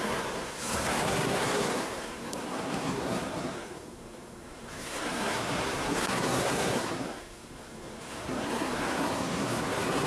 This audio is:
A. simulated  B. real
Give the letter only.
A